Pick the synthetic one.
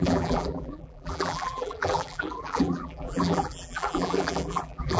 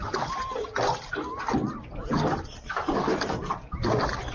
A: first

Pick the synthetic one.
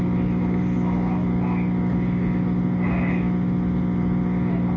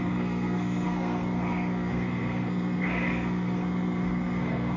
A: second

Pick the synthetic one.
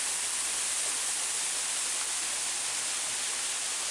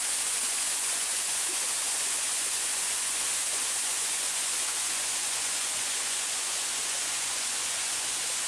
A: second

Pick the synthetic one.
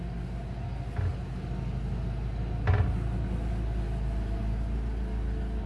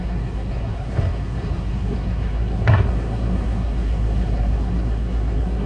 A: second